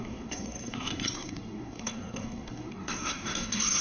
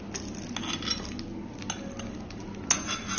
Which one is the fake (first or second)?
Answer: first